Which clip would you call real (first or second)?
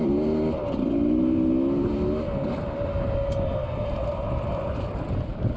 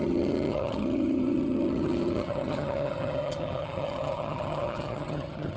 first